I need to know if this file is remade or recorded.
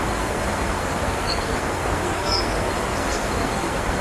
remade